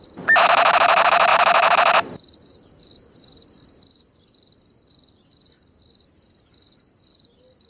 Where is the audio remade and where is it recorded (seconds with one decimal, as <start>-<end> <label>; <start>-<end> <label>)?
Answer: 0.0-7.7 recorded